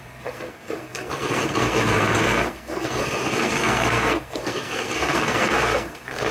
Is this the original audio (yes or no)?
no